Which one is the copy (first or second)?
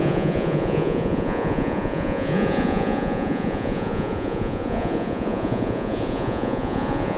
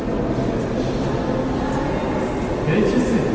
first